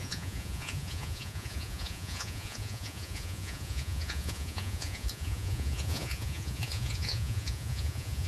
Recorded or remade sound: remade